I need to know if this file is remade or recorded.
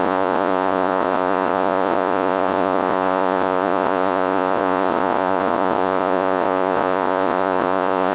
remade